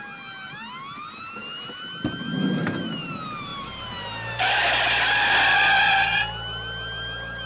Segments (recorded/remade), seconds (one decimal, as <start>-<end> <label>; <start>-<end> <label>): 0.0-3.5 recorded; 3.5-5.3 remade; 5.3-7.5 recorded